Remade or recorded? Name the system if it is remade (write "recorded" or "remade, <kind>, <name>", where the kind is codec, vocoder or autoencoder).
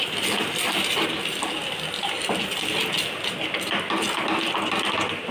recorded